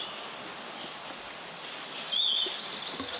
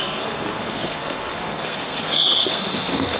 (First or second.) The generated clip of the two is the second